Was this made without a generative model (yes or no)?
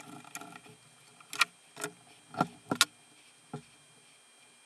yes